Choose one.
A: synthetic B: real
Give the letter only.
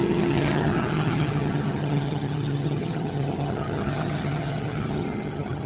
A